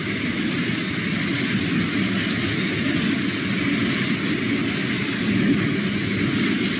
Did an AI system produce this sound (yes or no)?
no